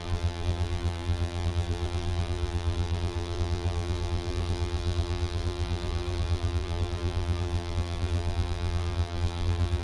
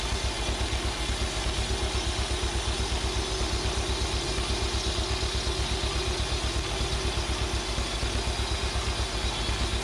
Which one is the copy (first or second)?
first